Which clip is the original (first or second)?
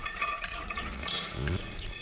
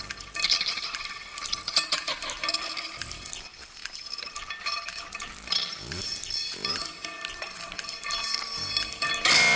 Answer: second